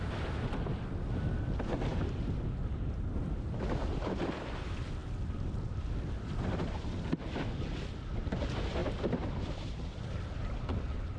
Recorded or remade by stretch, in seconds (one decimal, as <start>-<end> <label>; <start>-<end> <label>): 0.0-11.2 recorded